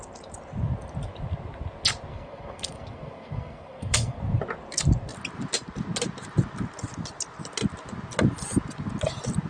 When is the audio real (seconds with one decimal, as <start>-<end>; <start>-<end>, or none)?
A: 0.0-2.1; 4.2-9.5